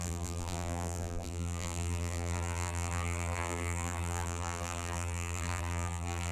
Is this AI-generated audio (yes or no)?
yes